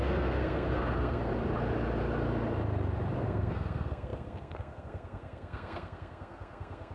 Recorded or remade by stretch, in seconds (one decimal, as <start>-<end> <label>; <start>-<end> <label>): 0.0-1.3 remade; 1.3-3.2 recorded; 3.2-6.9 remade